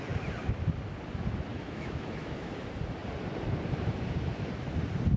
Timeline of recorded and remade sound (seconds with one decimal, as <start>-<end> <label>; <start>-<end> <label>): 0.0-1.5 recorded; 1.5-2.5 remade; 2.5-5.2 recorded